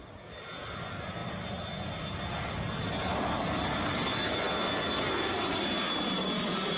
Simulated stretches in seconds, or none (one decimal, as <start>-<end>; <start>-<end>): none